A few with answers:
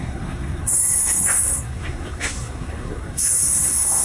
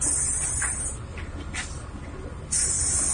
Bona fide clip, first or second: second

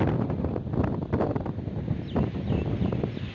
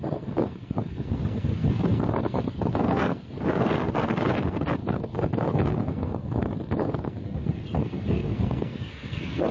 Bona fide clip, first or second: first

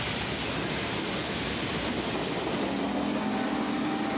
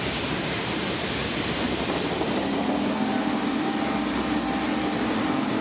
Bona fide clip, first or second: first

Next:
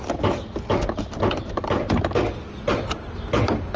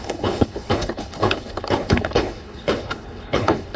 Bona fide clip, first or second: first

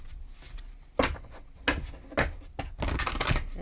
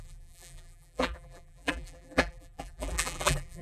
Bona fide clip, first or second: first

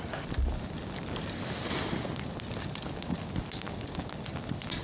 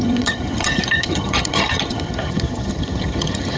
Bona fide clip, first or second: first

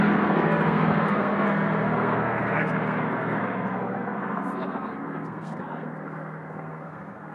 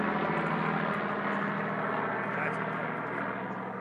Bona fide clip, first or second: second